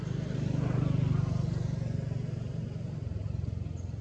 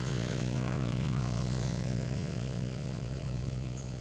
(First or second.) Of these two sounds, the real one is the first